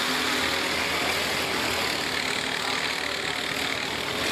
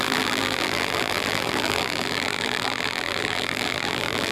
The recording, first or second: first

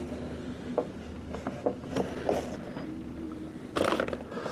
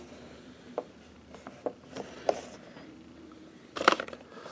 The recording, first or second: first